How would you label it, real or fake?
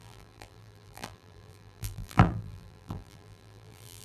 fake